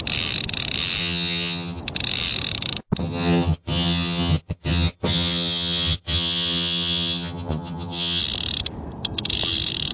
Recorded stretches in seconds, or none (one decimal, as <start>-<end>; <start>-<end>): 0.0-1.0; 1.8-3.0; 8.2-9.9